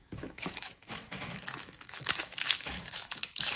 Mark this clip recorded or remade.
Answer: remade